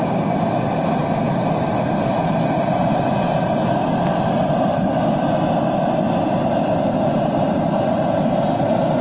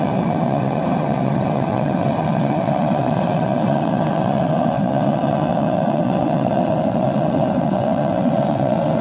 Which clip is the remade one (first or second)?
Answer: second